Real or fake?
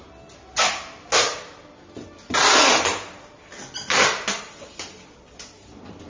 real